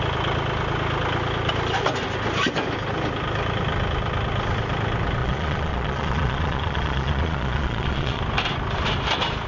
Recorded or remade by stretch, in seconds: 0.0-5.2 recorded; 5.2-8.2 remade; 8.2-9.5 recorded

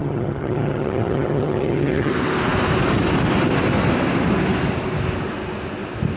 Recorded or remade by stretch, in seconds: 0.0-2.1 remade; 2.1-6.2 recorded

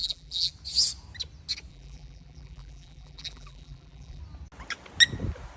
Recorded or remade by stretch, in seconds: 0.0-0.5 remade; 0.5-1.7 recorded; 1.7-4.2 remade; 4.2-5.6 recorded